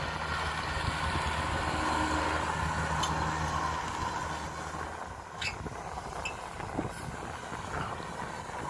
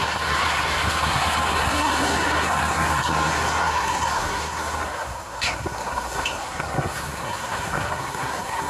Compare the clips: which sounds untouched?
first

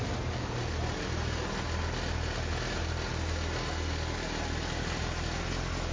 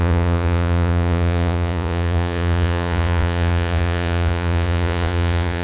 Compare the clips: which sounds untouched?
first